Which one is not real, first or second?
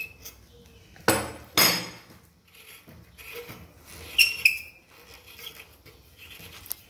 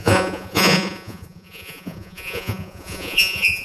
second